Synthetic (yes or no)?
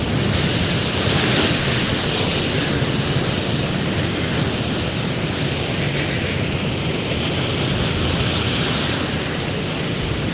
no